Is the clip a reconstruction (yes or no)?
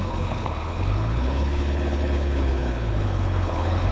yes